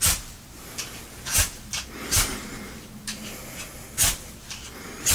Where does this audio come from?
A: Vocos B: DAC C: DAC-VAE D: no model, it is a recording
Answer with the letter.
D